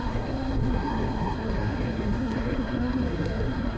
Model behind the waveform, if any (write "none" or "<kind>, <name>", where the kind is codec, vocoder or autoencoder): codec, SNAC